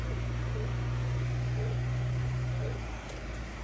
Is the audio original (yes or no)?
yes